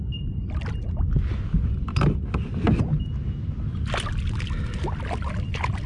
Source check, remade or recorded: recorded